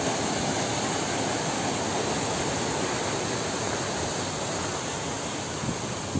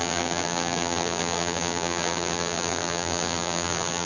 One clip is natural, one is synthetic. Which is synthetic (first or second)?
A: second